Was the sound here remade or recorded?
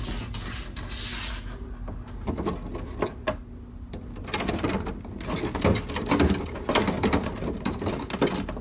recorded